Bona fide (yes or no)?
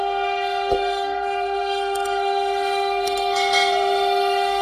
no